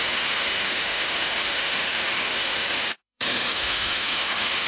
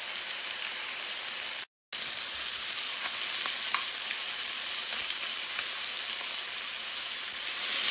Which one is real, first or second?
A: second